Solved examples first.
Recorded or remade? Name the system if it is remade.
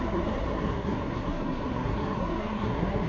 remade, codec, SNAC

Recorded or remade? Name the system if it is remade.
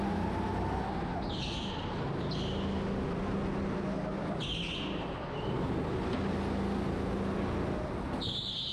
recorded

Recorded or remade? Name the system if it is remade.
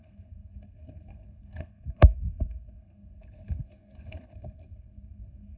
remade, codec, SNAC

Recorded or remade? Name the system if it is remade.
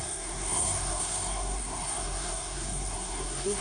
remade, codec, SNAC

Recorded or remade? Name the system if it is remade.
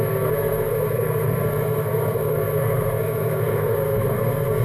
remade, codec, SNAC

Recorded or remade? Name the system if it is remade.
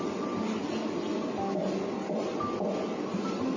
recorded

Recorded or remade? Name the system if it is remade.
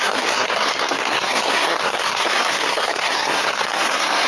remade, codec, SNAC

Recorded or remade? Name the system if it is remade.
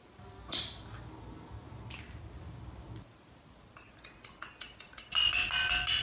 recorded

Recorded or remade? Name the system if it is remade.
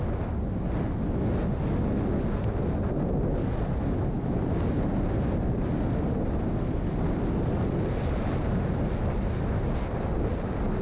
recorded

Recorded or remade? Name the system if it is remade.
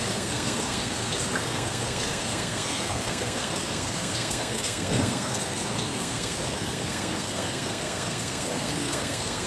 remade, codec, SNAC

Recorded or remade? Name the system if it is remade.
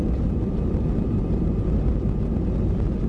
recorded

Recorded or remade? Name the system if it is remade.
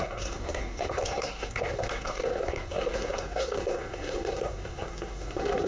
remade, codec, SNAC